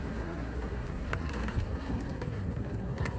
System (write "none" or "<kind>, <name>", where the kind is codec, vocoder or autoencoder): codec, SNAC